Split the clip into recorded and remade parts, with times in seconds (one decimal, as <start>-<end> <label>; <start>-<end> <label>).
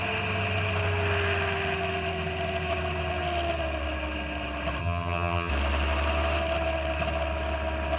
0.0-4.8 recorded; 4.8-5.5 remade; 5.5-8.0 recorded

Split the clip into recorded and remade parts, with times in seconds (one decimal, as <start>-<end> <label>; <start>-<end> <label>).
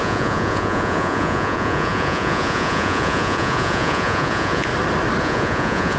0.0-4.7 remade; 4.7-5.2 recorded; 5.2-6.0 remade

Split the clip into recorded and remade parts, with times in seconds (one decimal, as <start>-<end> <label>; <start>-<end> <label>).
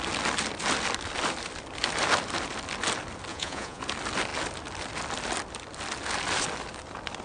0.0-3.3 recorded; 3.3-3.8 remade; 3.8-7.2 recorded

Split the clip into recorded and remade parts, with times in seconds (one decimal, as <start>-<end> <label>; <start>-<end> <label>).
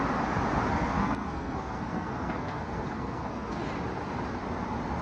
0.0-0.7 recorded; 0.7-3.6 remade; 3.6-5.0 recorded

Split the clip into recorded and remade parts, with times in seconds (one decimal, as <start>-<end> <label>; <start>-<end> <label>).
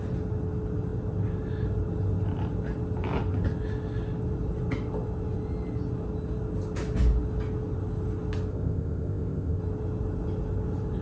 0.0-8.5 recorded; 8.5-9.6 remade; 9.6-11.0 recorded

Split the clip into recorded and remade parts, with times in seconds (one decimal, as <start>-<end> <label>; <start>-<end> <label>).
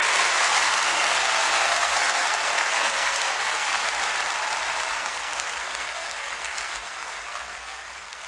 0.0-3.8 remade; 3.8-4.9 recorded; 4.9-8.3 remade